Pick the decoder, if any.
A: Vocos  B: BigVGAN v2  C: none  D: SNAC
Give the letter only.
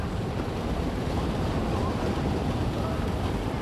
C